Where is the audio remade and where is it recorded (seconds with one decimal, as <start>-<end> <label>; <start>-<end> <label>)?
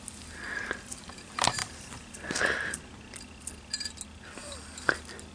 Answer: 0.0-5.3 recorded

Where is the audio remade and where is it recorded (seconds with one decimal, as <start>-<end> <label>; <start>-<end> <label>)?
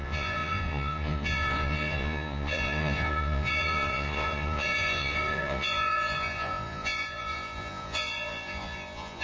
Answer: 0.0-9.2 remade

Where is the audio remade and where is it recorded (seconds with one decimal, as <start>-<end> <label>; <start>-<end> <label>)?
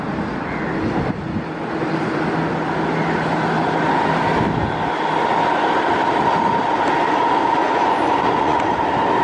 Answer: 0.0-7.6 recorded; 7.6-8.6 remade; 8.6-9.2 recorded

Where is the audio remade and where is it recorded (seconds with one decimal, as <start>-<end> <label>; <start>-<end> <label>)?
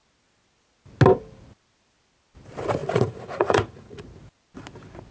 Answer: 0.0-2.8 recorded; 2.8-4.0 remade; 4.0-5.1 recorded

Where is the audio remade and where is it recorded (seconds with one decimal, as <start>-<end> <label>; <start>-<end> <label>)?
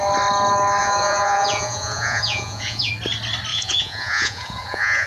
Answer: 0.0-0.8 recorded; 0.8-2.9 remade; 2.9-3.5 recorded; 3.5-5.1 remade